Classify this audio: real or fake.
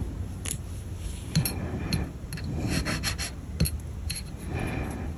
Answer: real